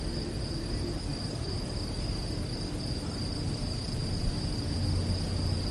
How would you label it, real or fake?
real